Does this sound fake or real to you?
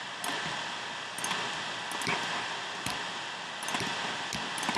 real